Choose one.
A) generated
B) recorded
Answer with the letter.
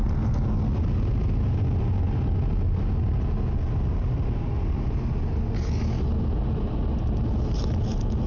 B